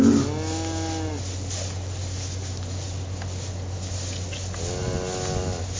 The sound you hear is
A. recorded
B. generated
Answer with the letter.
A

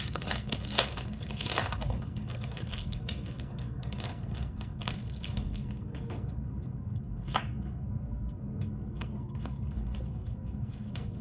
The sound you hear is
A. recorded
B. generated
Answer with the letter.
B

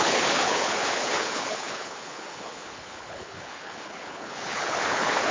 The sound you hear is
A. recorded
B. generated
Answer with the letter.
B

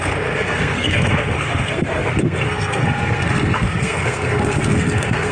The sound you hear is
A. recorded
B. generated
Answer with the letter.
B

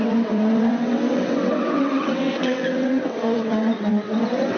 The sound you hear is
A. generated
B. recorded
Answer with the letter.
A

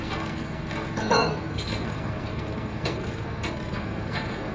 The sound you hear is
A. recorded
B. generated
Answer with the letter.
B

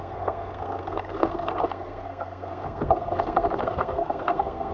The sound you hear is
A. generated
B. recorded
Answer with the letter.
A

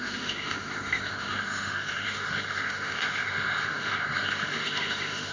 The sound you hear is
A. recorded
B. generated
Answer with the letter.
B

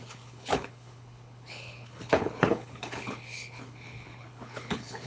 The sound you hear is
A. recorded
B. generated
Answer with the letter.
B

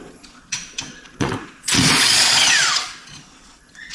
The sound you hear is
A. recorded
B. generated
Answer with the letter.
B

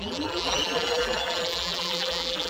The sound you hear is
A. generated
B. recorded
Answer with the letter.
A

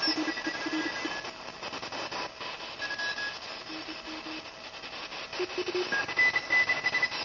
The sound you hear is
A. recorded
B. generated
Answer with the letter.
A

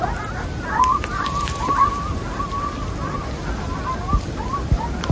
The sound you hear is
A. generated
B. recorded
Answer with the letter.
B